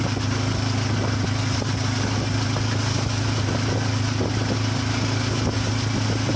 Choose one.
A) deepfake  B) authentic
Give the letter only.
B